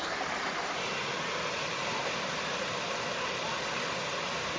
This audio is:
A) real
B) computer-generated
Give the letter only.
A